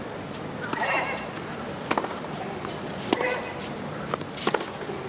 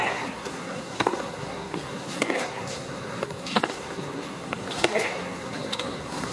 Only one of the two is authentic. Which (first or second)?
first